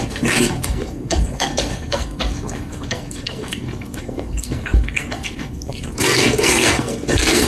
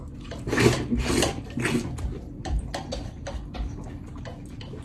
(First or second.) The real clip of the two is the second